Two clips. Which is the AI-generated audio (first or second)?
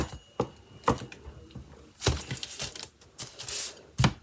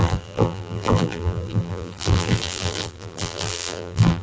second